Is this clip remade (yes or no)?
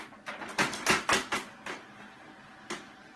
no